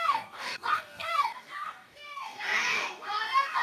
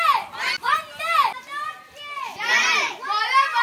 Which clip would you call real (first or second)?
second